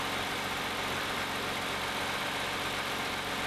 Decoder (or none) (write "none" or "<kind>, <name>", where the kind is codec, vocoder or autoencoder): vocoder, BigVGAN v2